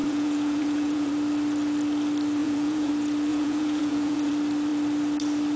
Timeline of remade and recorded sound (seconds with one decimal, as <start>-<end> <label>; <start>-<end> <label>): 0.0-1.1 remade; 1.1-2.4 recorded; 2.4-2.9 remade; 2.9-3.3 recorded; 3.3-4.3 remade; 4.3-5.6 recorded